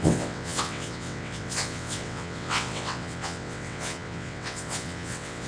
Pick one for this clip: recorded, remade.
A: remade